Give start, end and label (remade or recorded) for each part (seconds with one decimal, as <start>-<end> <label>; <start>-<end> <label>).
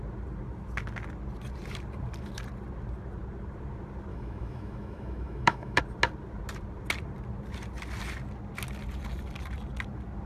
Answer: 0.0-4.1 recorded; 4.1-5.8 remade; 5.8-10.3 recorded